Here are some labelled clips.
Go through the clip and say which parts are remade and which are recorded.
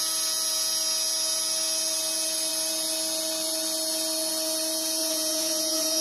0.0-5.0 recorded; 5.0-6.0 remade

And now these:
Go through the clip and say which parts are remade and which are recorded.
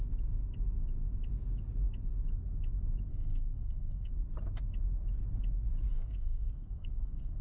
0.0-3.1 recorded; 3.1-4.1 remade; 4.1-5.9 recorded; 5.9-7.4 remade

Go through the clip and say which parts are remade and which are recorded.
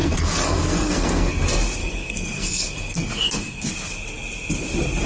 0.0-1.3 remade; 1.3-1.8 recorded; 1.8-3.7 remade; 3.7-5.1 recorded